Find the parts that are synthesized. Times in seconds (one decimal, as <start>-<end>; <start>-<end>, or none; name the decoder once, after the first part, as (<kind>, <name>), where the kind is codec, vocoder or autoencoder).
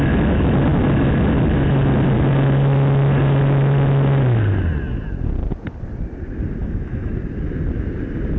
6.6-7.1 (autoencoder, DAC-VAE)